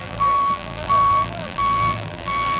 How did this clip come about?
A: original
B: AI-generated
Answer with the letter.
B